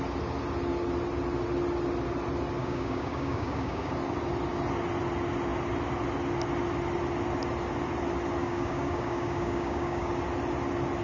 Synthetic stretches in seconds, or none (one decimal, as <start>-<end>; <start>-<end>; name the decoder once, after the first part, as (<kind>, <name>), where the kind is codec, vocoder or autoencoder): 2.6-3.9 (codec, DAC); 8.4-10.1